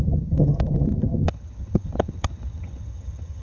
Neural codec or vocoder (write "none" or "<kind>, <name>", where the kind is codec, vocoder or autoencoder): vocoder, HiFi-GAN